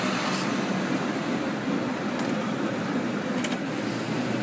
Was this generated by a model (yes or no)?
no